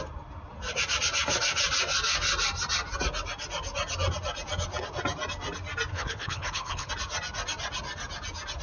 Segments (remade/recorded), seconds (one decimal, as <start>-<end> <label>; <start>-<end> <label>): 0.0-5.9 recorded; 5.9-6.9 remade; 6.9-8.6 recorded